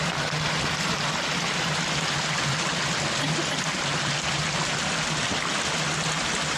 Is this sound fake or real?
real